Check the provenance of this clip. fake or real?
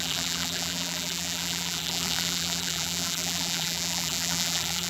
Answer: fake